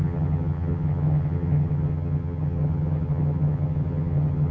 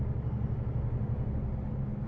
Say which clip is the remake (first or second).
first